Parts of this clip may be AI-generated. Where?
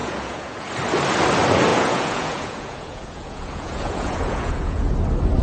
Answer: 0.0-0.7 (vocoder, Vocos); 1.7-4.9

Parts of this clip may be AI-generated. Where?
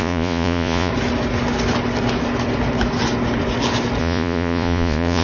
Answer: 0.0-0.9 (vocoder, Vocos); 4.0-5.2